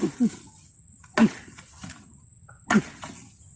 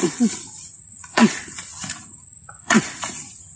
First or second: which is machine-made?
second